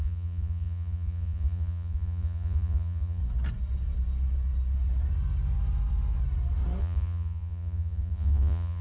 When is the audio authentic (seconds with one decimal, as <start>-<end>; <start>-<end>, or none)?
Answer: 3.2-6.8